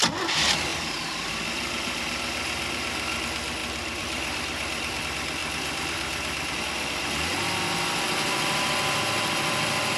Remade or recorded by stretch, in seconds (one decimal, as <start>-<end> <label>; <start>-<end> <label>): 0.0-0.7 recorded; 0.7-2.0 remade; 2.0-3.6 recorded; 3.6-5.0 remade; 5.0-5.4 recorded; 5.4-6.5 remade; 6.5-10.0 recorded